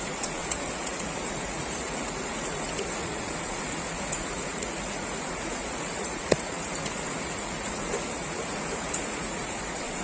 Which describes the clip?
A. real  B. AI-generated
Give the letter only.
B